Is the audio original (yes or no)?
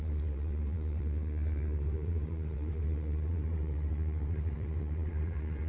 no